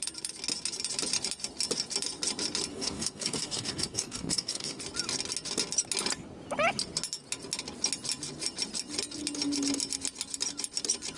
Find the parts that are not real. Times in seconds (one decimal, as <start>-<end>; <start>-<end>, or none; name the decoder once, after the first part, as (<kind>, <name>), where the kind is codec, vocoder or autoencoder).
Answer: 2.7-4.8 (codec, DAC)